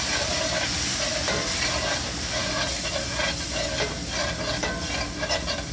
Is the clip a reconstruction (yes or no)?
no